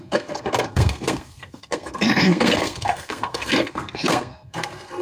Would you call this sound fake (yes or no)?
yes